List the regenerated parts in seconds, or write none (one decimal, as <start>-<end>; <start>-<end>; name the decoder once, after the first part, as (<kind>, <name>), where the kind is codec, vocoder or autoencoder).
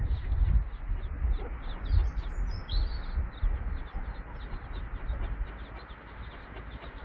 none